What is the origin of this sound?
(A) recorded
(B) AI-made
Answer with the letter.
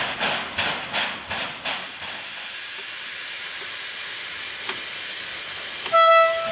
A